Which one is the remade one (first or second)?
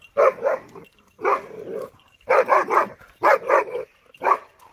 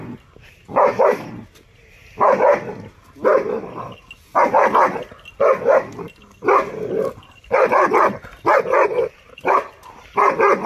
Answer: first